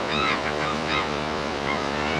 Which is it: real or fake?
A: fake